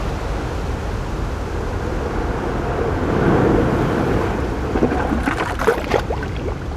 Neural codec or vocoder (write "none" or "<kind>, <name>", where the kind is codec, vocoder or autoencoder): none